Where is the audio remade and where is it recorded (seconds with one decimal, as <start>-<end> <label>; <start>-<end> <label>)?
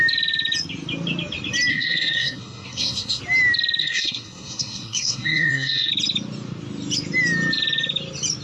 0.0-1.7 recorded; 1.7-3.2 remade; 3.2-3.8 recorded; 3.8-5.9 remade; 5.9-8.4 recorded